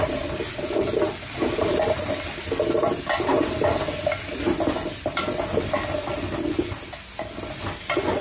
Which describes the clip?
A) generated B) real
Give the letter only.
B